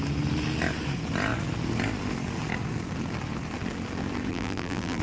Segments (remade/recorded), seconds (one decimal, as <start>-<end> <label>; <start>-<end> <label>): 0.0-4.3 recorded; 4.3-5.0 remade